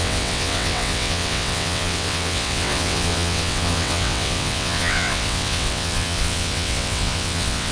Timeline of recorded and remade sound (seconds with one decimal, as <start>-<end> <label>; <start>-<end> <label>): 0.0-7.7 remade